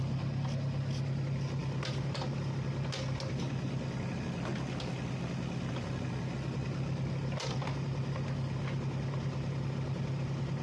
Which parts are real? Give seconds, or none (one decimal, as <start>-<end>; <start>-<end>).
0.0-10.6